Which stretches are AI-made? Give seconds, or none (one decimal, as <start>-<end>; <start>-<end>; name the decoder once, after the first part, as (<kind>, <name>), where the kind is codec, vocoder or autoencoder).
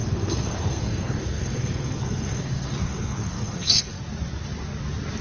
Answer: 0.0-4.0 (codec, SNAC)